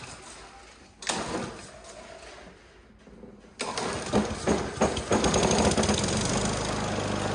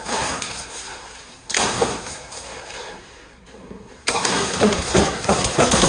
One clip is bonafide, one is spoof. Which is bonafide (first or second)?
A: first